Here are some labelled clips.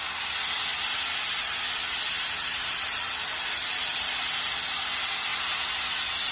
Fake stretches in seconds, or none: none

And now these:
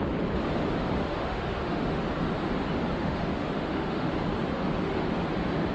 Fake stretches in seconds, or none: 1.0-2.0 (autoencoder, DAC-VAE); 2.9-4.1; 4.5-5.1